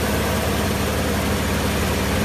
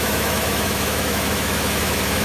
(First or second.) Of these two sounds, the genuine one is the first